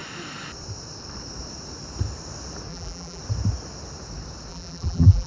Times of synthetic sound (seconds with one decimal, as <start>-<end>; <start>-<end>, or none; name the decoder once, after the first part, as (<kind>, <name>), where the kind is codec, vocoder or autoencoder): 2.7-3.2 (vocoder, BigVGAN v2); 4.5-5.3